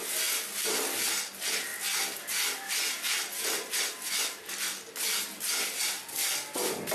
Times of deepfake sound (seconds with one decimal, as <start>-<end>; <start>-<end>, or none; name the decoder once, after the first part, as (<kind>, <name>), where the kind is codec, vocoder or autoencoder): none